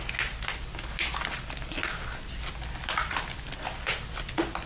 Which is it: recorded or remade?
recorded